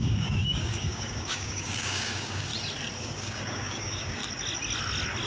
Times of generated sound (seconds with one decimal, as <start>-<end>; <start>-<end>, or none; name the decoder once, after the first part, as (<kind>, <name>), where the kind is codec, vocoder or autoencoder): 0.0-2.5 (codec, DAC); 3.0-4.2